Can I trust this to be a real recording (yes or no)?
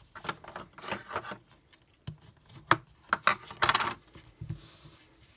yes